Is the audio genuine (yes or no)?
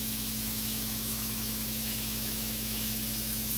no